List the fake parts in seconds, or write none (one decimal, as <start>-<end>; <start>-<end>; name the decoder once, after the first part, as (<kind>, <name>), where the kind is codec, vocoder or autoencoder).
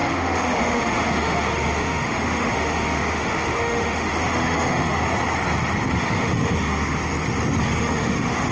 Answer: 0.0-5.0 (autoencoder, DAC-VAE); 5.9-7.0; 7.6-8.5